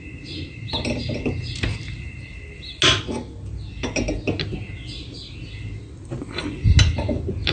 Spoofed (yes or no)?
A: no